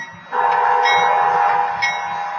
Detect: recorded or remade recorded